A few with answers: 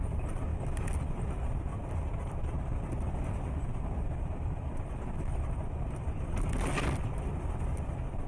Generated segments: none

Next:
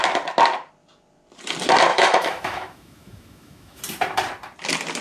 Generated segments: 1.9-3.8

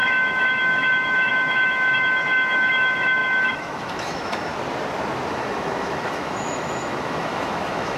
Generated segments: 0.0-4.5; 5.3-8.0

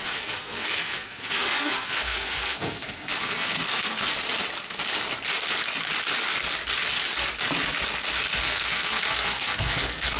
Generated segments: 0.0-4.1; 8.4-10.2

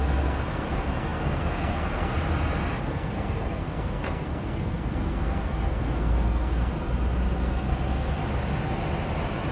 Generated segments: 0.0-2.1; 2.8-6.7; 7.4-8.2

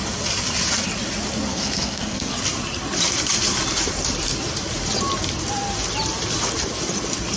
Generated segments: 1.5-2.3

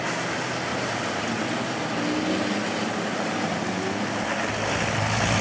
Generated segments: 0.7-1.4

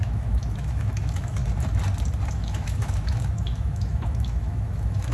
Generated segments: 0.0-1.4; 2.3-5.1